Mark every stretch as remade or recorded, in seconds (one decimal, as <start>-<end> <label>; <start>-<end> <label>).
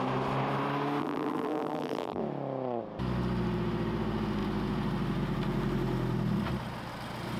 0.0-1.0 recorded; 1.0-2.2 remade; 2.2-7.4 recorded